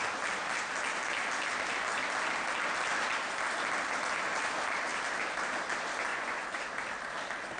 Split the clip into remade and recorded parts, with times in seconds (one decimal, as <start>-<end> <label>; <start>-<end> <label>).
0.0-6.1 recorded; 6.1-6.6 remade; 6.6-7.6 recorded